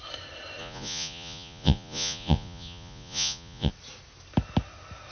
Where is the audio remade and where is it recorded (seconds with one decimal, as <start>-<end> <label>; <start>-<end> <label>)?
0.0-0.6 recorded; 0.6-3.7 remade; 3.7-5.1 recorded